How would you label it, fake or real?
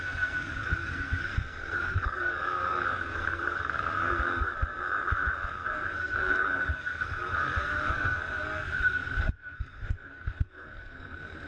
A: fake